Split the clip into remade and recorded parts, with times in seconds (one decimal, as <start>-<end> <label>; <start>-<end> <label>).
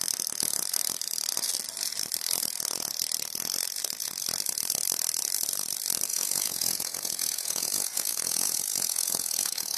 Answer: 0.0-6.1 recorded; 6.1-9.8 remade